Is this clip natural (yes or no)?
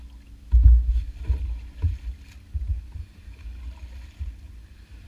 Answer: yes